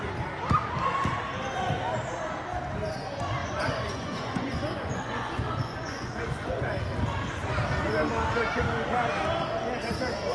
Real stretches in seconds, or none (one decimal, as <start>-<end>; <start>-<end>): 0.0-3.4; 6.8-10.3